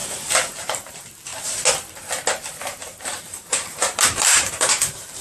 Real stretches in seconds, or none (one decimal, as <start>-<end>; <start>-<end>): 0.0-0.6; 1.3-3.2